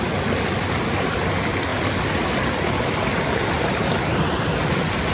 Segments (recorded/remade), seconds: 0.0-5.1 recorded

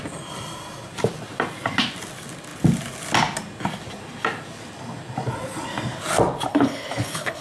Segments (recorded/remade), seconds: 0.0-6.5 recorded; 6.5-7.4 remade

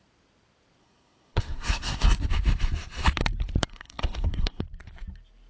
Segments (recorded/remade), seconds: 0.0-0.8 recorded; 0.8-2.3 remade; 2.3-3.7 recorded; 3.7-4.6 remade; 4.6-5.5 recorded